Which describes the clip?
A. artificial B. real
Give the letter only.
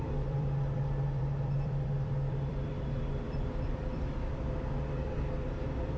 A